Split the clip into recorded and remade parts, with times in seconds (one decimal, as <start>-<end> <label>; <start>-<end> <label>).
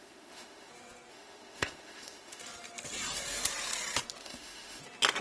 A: 0.0-0.7 remade; 0.7-1.1 recorded; 1.1-2.4 remade; 2.4-4.2 recorded; 4.2-4.8 remade; 4.8-5.2 recorded